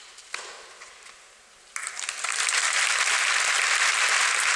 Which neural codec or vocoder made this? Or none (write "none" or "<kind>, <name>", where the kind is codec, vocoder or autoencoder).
none